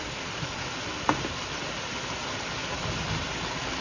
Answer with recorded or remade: recorded